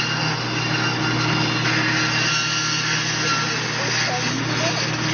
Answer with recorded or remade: recorded